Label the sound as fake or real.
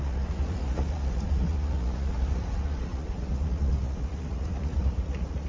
fake